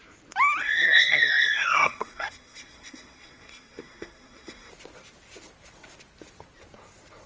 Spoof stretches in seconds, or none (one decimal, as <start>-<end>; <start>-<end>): 0.6-4.7